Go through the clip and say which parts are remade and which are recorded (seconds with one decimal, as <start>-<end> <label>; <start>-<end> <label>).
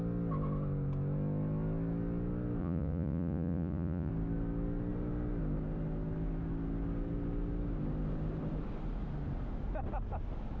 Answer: 0.0-2.6 recorded; 2.6-4.1 remade; 4.1-10.6 recorded